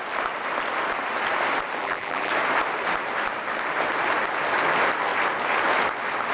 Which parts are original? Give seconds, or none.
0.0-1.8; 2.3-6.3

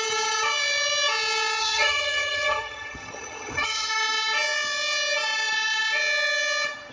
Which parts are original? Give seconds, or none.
0.0-1.6; 3.9-6.9

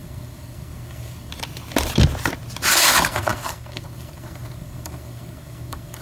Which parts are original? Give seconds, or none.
1.3-2.7

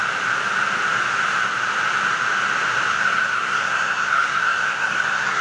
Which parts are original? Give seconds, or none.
0.0-2.9

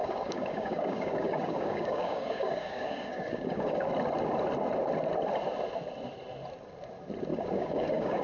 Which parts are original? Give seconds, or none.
3.9-7.3